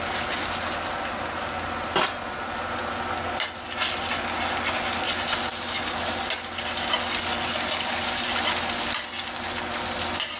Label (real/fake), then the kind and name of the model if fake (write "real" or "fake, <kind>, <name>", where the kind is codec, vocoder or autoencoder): real